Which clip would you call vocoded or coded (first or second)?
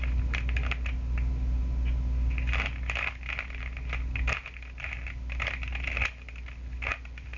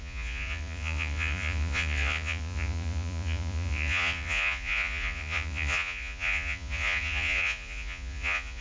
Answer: second